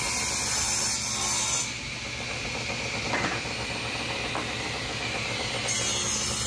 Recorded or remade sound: recorded